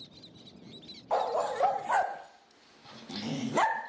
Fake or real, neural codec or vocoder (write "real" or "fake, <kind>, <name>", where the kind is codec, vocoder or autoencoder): real